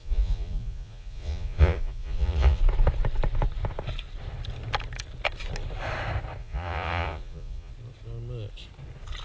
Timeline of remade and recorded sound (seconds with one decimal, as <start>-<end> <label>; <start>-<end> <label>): 0.0-2.6 remade; 2.6-6.4 recorded; 6.4-7.7 remade; 7.7-9.2 recorded